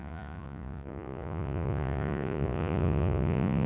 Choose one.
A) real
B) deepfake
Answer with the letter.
B